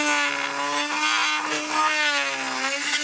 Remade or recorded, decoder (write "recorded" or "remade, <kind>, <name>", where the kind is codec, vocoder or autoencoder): recorded